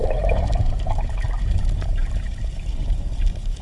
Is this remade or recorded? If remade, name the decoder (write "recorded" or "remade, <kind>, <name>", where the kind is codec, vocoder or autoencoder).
remade, vocoder, BigVGAN v2